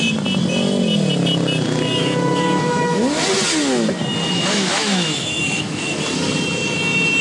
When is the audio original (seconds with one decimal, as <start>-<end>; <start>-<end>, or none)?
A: 0.0-2.0; 3.0-4.2; 6.0-7.2